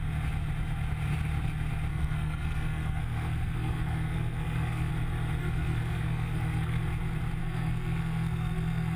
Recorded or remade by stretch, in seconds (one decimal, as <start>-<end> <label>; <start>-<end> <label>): 0.0-1.9 recorded; 1.9-4.9 remade; 4.9-5.4 recorded; 5.4-6.8 remade; 6.8-7.4 recorded; 7.4-9.0 remade